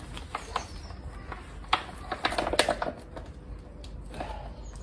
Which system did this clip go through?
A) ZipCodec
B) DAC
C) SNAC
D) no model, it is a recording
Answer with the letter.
D